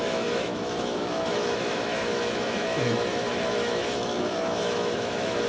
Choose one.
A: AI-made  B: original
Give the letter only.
A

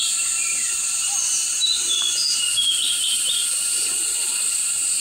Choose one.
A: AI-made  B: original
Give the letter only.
B